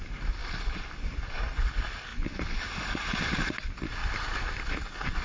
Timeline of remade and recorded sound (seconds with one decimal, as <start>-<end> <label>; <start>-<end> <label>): 0.0-2.1 recorded; 2.1-2.6 remade; 2.6-4.0 recorded; 4.0-5.2 remade